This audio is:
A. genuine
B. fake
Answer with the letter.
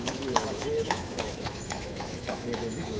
B